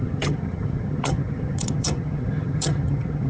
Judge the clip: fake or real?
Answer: fake